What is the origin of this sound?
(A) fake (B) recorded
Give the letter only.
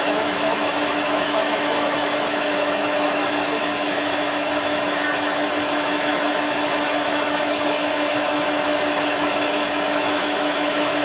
A